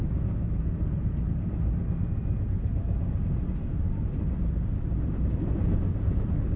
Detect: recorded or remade recorded